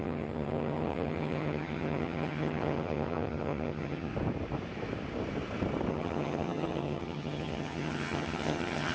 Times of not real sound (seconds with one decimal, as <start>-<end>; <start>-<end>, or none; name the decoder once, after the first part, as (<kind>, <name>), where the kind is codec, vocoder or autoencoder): 0.0-4.1 (vocoder, HiFi-GAN); 5.9-8.9